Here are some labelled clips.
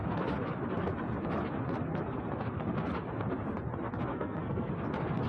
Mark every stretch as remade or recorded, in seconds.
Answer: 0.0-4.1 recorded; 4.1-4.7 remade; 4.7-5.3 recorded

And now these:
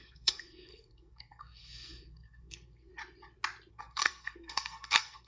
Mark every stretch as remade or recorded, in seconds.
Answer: 0.0-2.9 remade; 2.9-3.7 recorded; 3.7-5.3 remade